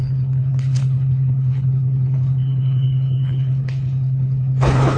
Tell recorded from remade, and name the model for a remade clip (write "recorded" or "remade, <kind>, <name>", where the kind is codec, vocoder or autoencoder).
remade, codec, HILCodec